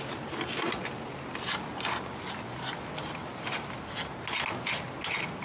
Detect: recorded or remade recorded